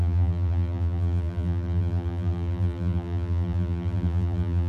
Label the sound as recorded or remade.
remade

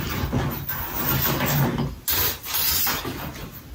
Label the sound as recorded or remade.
recorded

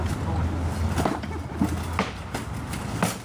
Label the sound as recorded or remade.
recorded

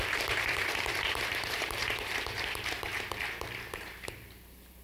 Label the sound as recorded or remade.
remade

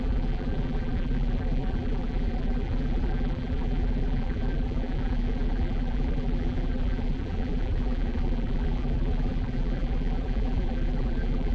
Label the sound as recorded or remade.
remade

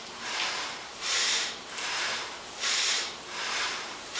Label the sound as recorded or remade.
remade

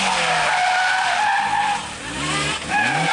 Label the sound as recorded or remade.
recorded